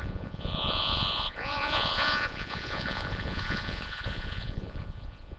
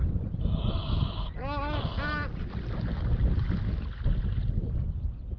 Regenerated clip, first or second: first